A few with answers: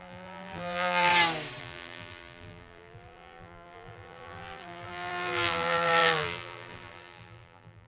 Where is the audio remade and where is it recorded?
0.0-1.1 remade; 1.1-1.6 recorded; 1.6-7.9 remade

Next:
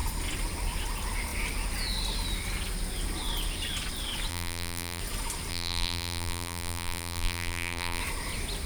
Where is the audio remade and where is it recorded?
0.0-4.3 recorded; 4.3-5.0 remade; 5.0-5.5 recorded; 5.5-8.0 remade; 8.0-8.7 recorded